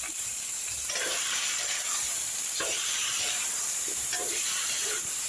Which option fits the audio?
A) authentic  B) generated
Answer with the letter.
B